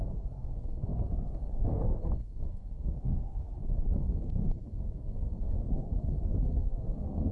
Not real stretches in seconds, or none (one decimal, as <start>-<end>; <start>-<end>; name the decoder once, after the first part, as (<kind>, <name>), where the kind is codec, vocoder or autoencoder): 0.0-7.3 (codec, SNAC)